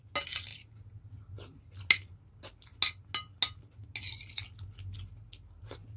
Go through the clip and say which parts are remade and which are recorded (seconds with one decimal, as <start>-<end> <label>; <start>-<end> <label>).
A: 0.0-6.0 recorded